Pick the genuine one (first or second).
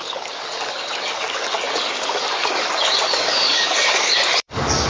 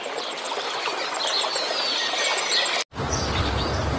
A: second